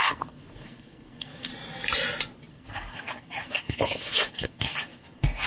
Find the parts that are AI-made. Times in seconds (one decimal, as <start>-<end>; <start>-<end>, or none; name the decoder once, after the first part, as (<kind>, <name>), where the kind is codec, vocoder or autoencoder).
0.0-1.5 (codec, SNAC); 2.5-5.5